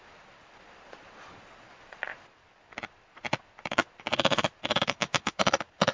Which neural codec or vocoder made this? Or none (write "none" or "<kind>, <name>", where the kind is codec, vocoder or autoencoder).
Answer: vocoder, Vocos